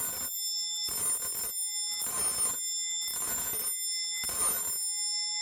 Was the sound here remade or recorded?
recorded